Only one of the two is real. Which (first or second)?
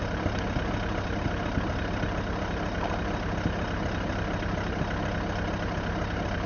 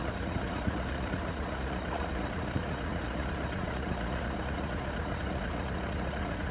first